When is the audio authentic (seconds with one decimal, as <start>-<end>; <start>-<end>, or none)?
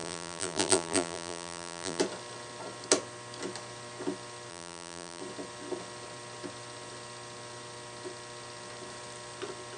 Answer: 2.0-4.5; 5.2-9.8